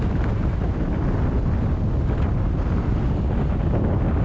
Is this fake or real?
real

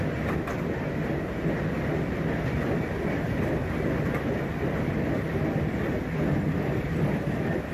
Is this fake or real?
real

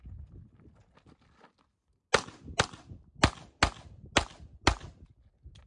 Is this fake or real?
real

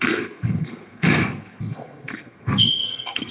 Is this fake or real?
fake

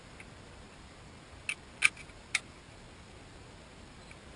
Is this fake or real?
real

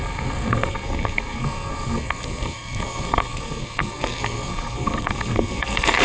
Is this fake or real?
fake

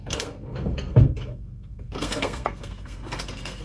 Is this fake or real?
fake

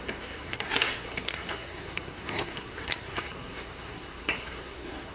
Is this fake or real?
fake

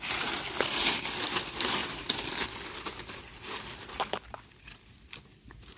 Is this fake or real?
real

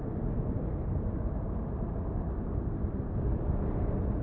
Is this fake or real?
real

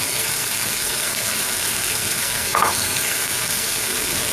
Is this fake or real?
fake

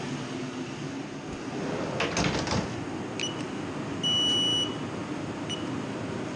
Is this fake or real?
real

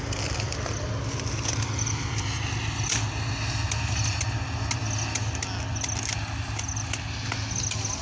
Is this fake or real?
real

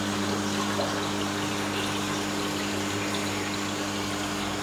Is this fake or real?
real